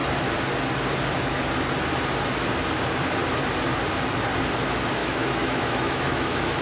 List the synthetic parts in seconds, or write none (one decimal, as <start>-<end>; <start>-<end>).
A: 5.0-6.6